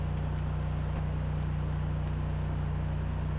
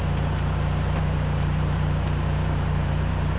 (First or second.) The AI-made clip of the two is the second